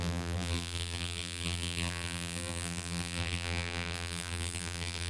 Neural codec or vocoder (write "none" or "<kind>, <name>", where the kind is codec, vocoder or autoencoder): vocoder, BigVGAN v2